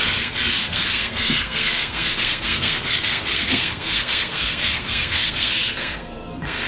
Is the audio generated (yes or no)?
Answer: yes